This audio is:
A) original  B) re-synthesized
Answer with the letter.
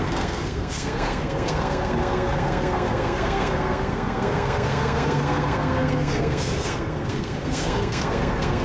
B